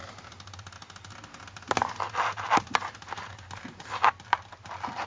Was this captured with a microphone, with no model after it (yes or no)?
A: yes